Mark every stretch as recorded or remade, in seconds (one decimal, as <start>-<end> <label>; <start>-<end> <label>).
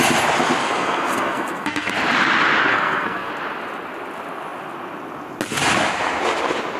0.0-0.6 recorded; 0.6-1.9 remade; 1.9-2.7 recorded; 2.7-3.3 remade; 3.3-6.8 recorded